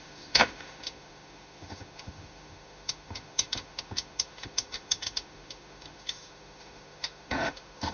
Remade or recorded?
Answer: remade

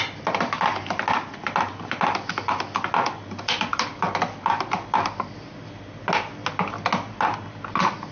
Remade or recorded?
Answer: recorded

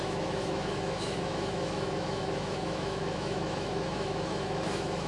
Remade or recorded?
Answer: remade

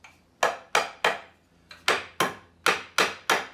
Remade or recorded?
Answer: recorded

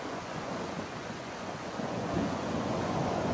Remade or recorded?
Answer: remade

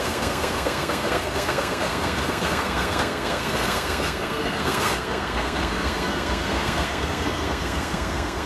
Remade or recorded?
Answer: remade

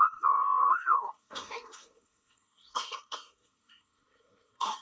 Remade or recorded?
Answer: remade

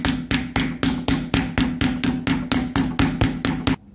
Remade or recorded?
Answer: recorded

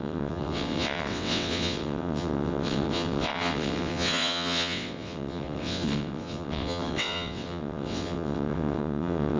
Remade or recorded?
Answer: remade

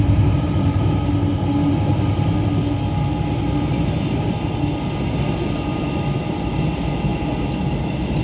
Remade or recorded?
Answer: recorded